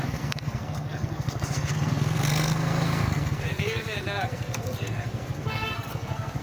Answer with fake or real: fake